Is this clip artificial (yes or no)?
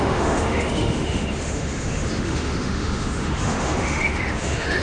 yes